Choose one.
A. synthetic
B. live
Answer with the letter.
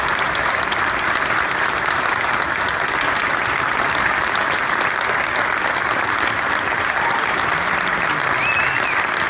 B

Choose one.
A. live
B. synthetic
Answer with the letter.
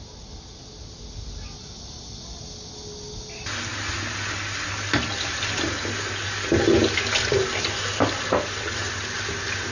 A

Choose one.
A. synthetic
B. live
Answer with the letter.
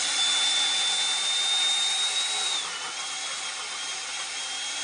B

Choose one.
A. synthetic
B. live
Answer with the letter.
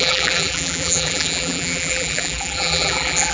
A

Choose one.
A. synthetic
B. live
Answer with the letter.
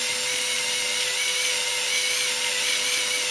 B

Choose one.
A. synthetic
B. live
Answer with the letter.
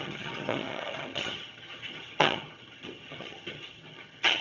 A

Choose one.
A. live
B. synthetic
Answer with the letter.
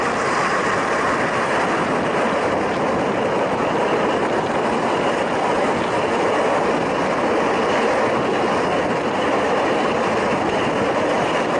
A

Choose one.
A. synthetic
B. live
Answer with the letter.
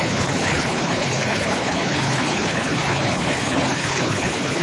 A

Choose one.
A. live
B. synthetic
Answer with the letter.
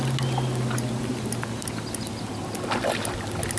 A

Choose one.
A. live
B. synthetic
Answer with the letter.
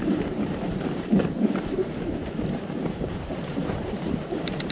B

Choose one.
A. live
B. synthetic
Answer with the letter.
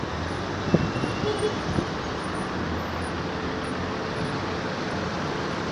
A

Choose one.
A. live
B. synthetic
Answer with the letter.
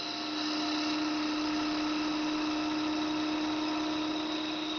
A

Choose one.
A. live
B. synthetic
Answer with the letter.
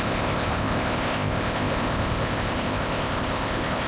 B